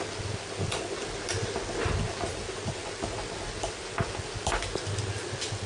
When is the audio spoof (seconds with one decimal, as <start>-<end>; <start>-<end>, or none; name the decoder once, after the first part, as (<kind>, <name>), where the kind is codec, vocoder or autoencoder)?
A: none